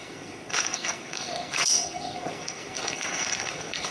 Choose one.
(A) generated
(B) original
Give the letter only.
A